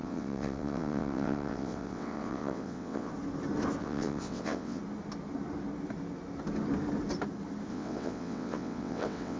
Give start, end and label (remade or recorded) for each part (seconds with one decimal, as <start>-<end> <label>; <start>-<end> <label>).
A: 0.0-3.1 remade; 3.1-3.8 recorded; 3.8-4.8 remade; 4.8-7.7 recorded; 7.7-9.4 remade